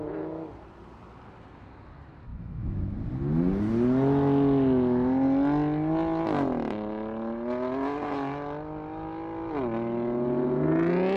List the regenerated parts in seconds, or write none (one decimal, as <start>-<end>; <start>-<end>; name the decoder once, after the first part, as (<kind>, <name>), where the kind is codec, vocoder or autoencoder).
2.3-2.8 (autoencoder, DAC-VAE)